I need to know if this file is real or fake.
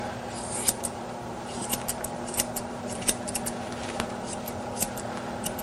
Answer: fake